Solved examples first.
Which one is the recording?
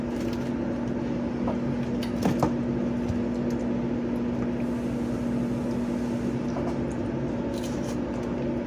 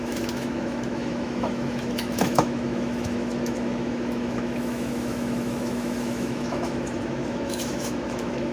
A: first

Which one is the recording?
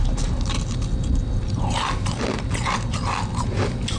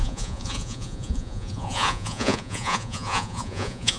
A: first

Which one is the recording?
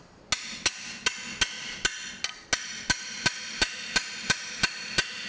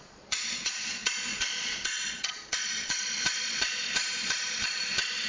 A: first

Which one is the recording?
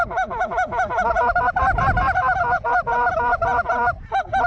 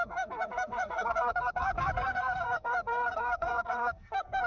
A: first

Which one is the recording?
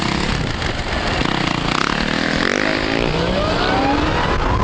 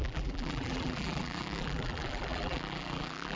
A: first